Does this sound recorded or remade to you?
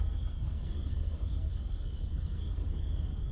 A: remade